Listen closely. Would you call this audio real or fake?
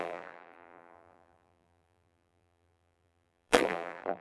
fake